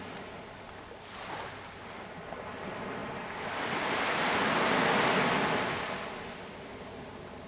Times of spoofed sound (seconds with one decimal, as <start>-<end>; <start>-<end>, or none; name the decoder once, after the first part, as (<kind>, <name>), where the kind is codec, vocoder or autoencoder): none